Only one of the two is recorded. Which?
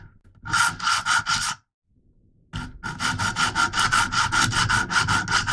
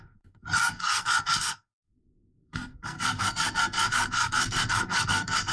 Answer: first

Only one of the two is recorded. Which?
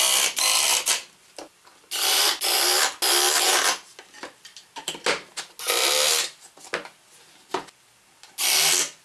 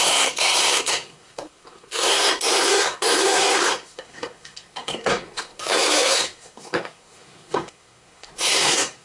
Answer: first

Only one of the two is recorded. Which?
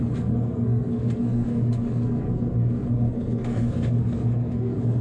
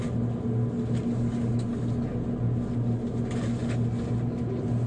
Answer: second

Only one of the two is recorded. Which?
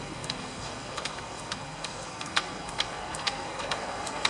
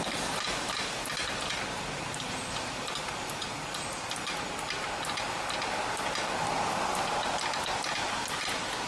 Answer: second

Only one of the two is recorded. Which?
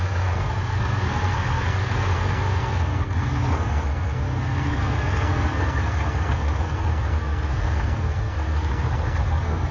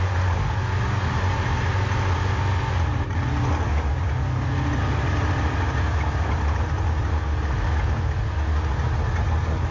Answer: second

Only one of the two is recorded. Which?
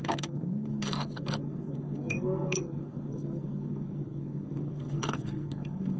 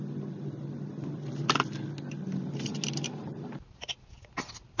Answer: second